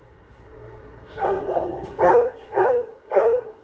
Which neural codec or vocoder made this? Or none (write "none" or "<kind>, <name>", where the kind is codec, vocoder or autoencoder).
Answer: codec, SNAC